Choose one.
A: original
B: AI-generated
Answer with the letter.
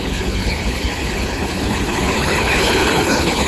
B